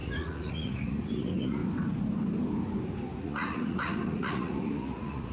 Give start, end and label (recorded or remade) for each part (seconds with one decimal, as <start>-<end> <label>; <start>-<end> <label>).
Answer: 0.0-1.6 remade; 1.6-3.2 recorded; 3.2-5.3 remade